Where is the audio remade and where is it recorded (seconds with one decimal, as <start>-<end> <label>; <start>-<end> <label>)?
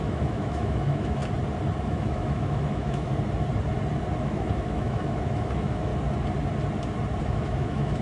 0.0-1.2 remade; 1.2-1.8 recorded; 1.8-3.1 remade; 3.1-4.2 recorded; 4.2-5.9 remade; 5.9-7.2 recorded; 7.2-8.0 remade